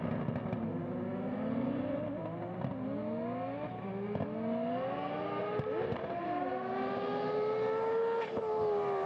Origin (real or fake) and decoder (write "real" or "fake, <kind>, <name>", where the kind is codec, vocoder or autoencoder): real